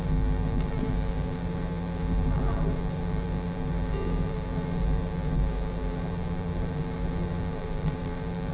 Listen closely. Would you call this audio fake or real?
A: fake